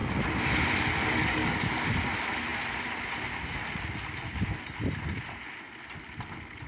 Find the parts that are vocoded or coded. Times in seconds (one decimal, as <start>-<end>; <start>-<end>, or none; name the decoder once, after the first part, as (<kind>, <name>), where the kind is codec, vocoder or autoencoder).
1.0-1.9 (codec, DAC)